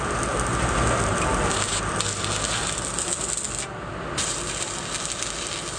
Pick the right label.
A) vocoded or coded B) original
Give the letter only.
B